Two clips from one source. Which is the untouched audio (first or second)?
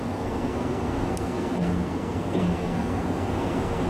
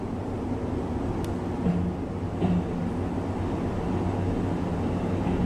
second